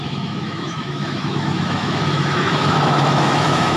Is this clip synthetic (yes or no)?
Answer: yes